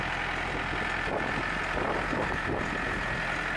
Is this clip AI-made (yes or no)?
no